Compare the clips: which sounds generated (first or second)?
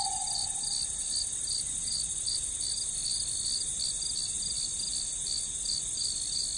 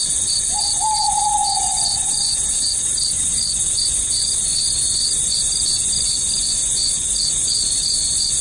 second